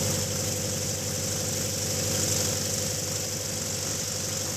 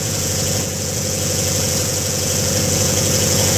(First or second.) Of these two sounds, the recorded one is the first